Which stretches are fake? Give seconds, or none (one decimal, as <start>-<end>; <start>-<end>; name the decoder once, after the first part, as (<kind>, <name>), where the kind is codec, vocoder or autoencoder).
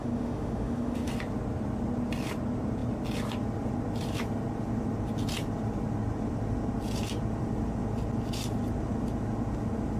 0.0-1.1 (autoencoder, DAC-VAE)